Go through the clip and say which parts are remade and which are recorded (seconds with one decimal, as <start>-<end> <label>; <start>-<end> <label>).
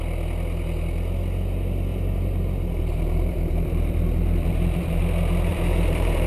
0.0-1.9 recorded; 1.9-5.0 remade; 5.0-5.5 recorded; 5.5-6.3 remade